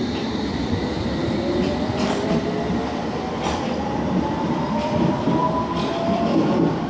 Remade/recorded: remade